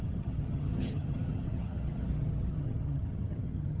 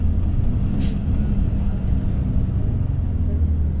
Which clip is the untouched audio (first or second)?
second